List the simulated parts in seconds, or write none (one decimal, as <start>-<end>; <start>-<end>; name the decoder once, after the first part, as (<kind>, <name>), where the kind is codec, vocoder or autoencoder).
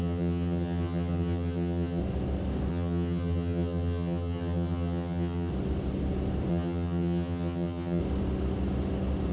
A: 0.0-2.0 (vocoder, HiFi-GAN); 2.7-5.5; 6.5-8.0